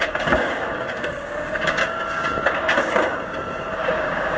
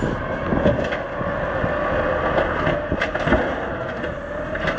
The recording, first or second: second